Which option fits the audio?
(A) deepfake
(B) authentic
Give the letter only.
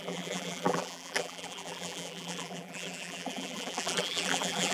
A